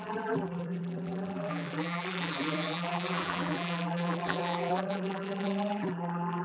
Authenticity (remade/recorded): remade